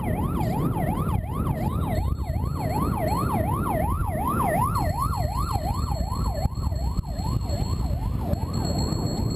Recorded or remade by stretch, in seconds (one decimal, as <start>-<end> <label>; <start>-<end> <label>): 0.0-4.0 recorded; 4.0-4.6 remade; 4.6-9.4 recorded